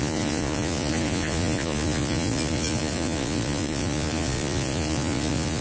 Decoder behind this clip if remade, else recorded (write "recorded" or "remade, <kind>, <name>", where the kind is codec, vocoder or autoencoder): remade, vocoder, Vocos